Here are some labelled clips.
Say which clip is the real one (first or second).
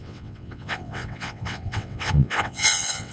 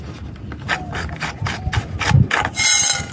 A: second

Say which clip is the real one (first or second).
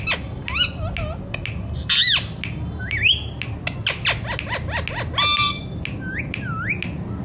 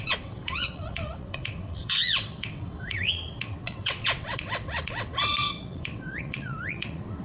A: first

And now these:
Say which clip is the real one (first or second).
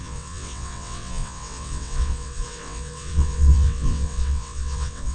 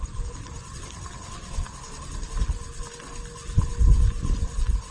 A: second